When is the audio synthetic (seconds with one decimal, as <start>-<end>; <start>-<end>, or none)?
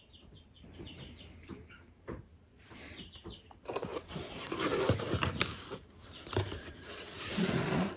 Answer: 0.0-3.9; 4.4-8.0